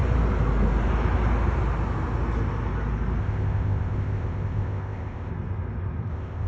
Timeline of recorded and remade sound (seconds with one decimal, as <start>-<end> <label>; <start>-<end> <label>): 0.0-3.2 recorded; 3.2-5.3 remade; 5.3-6.1 recorded; 6.1-6.5 remade